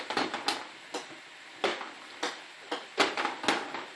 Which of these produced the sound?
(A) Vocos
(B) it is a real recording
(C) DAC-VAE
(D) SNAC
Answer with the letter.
B